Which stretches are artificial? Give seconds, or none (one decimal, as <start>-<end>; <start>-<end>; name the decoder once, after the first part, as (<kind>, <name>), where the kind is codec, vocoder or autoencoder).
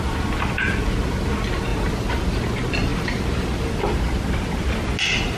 1.7-2.4 (vocoder, BigVGAN v2); 2.9-3.7